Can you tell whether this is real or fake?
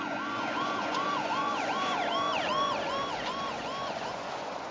fake